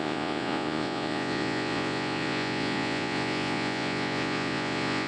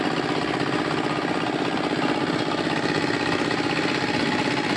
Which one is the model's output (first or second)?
first